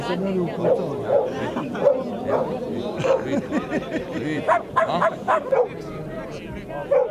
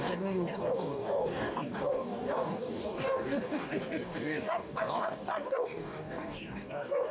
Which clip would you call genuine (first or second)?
first